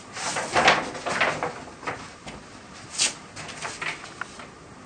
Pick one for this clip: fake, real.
real